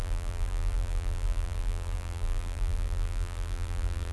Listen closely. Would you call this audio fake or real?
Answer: fake